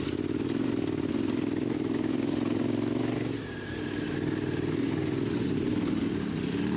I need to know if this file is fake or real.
real